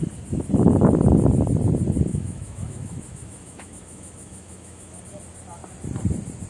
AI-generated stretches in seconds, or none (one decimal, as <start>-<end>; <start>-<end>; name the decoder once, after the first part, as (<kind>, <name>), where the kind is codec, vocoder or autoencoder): 2.1-5.0 (autoencoder, DAC-VAE)